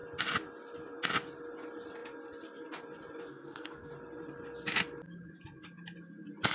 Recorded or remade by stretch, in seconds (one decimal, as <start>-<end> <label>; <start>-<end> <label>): 0.0-3.3 recorded; 3.3-3.9 remade; 3.9-6.5 recorded